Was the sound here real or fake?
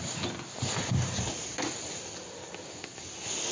real